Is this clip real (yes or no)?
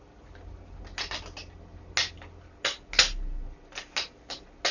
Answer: yes